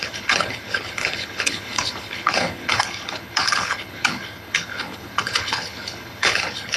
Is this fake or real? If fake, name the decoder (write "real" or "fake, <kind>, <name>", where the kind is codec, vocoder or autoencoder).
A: fake, codec, HILCodec